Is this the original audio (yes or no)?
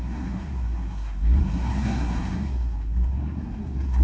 no